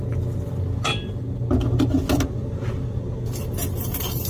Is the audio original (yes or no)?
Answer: yes